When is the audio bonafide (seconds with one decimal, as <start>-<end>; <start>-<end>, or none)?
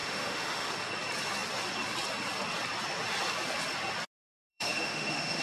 0.7-4.5